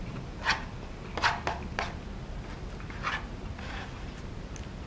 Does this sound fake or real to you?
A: real